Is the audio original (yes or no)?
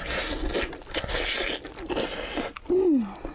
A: yes